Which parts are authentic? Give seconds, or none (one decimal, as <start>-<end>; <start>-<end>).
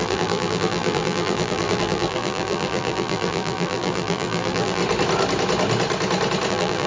4.8-6.5